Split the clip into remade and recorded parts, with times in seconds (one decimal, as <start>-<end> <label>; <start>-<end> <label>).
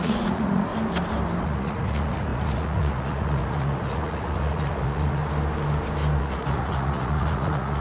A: 0.0-0.7 remade; 0.7-1.4 recorded; 1.4-5.2 remade; 5.2-6.2 recorded; 6.2-7.8 remade